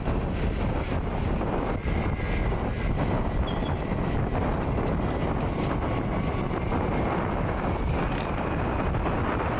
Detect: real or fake real